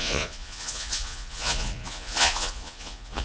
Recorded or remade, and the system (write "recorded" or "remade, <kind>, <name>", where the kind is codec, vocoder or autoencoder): remade, vocoder, Vocos